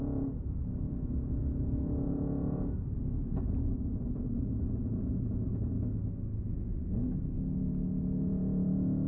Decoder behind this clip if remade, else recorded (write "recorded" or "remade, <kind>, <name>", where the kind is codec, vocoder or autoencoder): remade, vocoder, Vocos